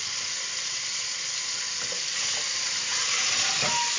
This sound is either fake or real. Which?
real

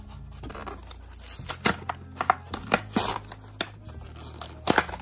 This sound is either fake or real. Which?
real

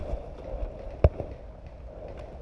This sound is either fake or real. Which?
real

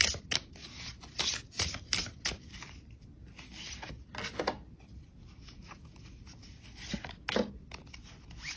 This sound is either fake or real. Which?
real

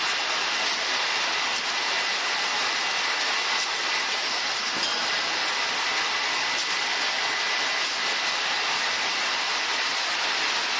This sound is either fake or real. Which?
real